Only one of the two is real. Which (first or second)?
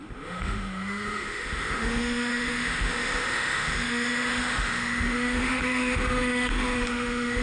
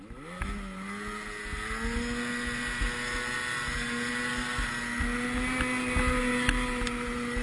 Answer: second